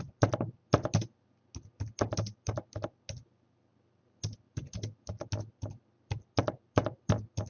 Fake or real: real